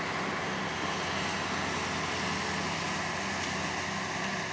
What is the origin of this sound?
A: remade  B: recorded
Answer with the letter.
B